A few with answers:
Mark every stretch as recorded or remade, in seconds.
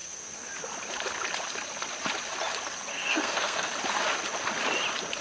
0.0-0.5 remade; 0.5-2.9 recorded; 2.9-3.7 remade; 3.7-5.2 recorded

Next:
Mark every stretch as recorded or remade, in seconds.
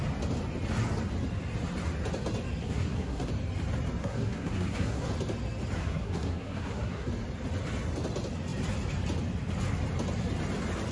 0.0-2.6 recorded; 2.6-3.3 remade; 3.3-4.0 recorded; 4.0-5.1 remade; 5.1-5.8 recorded; 5.8-7.1 remade; 7.1-10.9 recorded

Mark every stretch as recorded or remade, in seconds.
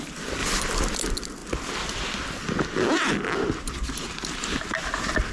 0.0-5.3 recorded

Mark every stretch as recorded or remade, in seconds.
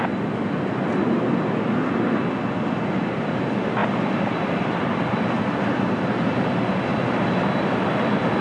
0.0-3.8 recorded; 3.8-5.6 remade; 5.6-6.9 recorded; 6.9-8.4 remade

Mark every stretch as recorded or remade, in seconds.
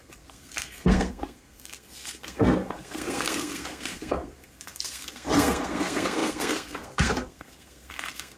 0.0-8.4 remade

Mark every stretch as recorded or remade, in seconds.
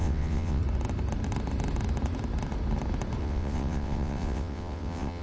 0.0-0.6 remade; 0.6-3.2 recorded; 3.2-5.2 remade